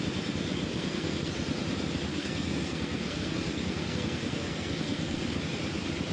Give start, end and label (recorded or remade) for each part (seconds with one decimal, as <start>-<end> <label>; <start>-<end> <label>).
0.0-0.7 recorded; 0.7-1.3 remade; 1.3-2.1 recorded; 2.1-5.4 remade; 5.4-6.1 recorded